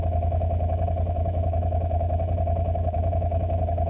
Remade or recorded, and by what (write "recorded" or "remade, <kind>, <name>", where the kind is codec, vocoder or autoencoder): remade, autoencoder, DAC-VAE